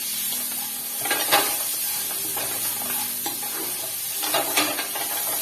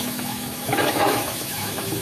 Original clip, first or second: first